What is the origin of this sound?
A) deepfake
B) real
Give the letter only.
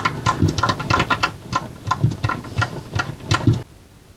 B